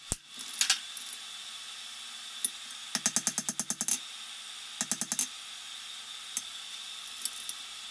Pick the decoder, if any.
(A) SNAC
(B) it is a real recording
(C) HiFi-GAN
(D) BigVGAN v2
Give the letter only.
B